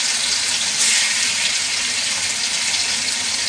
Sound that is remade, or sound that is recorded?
recorded